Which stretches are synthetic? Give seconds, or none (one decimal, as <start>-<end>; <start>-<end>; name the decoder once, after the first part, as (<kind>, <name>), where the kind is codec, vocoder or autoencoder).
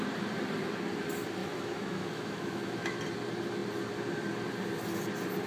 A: 1.4-3.0 (autoencoder, DAC-VAE)